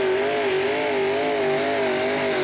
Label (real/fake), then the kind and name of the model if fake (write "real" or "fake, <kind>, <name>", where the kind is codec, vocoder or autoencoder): real